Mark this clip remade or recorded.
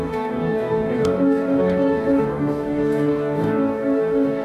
remade